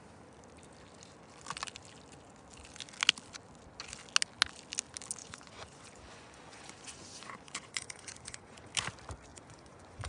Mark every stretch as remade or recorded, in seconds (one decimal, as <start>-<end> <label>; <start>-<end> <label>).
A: 0.0-5.2 recorded; 5.2-8.7 remade; 8.7-9.3 recorded; 9.3-10.1 remade